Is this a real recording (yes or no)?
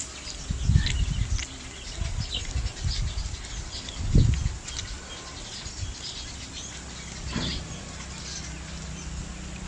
yes